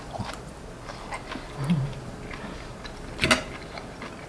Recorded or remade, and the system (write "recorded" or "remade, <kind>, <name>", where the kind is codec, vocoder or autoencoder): recorded